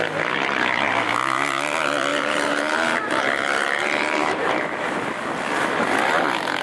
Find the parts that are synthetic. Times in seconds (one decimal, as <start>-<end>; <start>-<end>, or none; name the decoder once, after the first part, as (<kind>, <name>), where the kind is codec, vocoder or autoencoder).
2.1-5.1 (vocoder, BigVGAN v2)